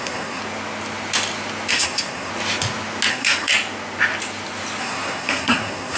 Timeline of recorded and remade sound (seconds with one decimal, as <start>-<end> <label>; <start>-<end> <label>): 0.0-0.4 remade; 0.4-1.7 recorded; 1.7-2.3 remade; 2.3-3.1 recorded; 3.1-3.5 remade; 3.5-4.8 recorded; 4.8-6.0 remade